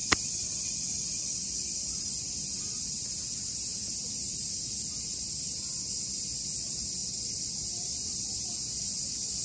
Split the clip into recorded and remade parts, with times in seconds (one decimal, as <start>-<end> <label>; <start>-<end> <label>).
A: 0.0-2.2 remade; 2.2-7.0 recorded; 7.0-8.5 remade; 8.5-9.4 recorded